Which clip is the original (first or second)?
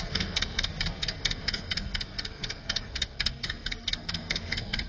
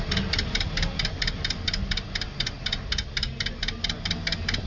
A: second